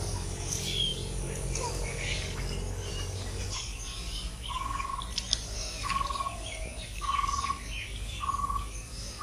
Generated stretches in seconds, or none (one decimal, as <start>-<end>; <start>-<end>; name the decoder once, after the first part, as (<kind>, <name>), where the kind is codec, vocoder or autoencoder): 0.0-4.9 (codec, DAC); 5.4-9.2